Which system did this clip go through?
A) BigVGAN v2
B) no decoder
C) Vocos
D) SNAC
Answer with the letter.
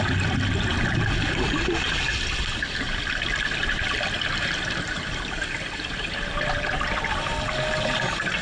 B